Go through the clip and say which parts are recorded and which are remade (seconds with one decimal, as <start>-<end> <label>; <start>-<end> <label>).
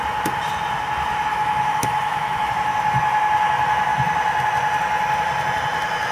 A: 0.0-1.3 recorded; 1.3-2.5 remade; 2.5-6.1 recorded